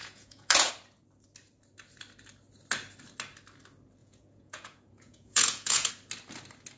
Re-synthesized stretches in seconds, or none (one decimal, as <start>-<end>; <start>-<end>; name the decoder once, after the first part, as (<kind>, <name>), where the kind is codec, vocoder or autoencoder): 0.0-0.7 (vocoder, Vocos); 4.0-5.9